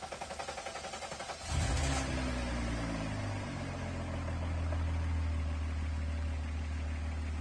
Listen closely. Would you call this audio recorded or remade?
recorded